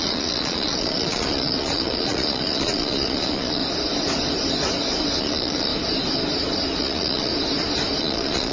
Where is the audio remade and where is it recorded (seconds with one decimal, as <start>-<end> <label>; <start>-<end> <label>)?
0.0-3.6 remade; 3.6-5.2 recorded; 5.2-5.7 remade; 5.7-6.8 recorded; 6.8-7.3 remade; 7.3-8.0 recorded; 8.0-8.5 remade